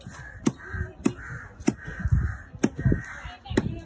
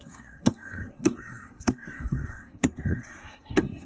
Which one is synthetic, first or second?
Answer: second